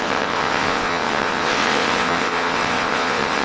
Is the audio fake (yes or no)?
yes